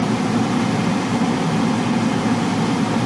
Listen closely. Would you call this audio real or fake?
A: real